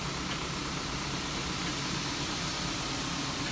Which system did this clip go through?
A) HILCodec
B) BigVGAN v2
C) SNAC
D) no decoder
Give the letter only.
D